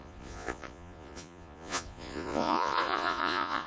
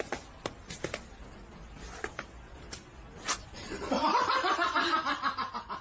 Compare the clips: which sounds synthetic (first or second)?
first